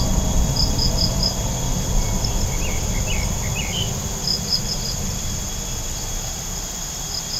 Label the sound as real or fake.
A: real